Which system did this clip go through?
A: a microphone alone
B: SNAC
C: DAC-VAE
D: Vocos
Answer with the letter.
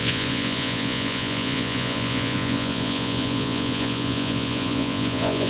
D